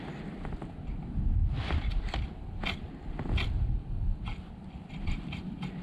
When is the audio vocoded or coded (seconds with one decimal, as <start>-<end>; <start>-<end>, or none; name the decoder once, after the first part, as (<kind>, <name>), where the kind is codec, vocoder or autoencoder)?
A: none